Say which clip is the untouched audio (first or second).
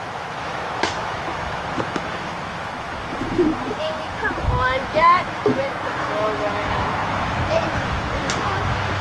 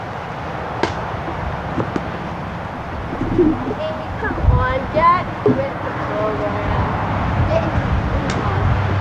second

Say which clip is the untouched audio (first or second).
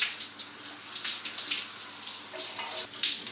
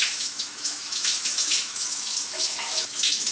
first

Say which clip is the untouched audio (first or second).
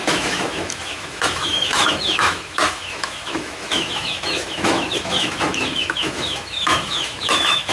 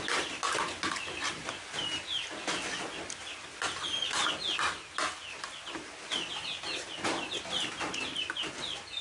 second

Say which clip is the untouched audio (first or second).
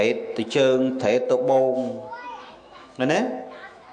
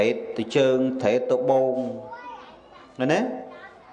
second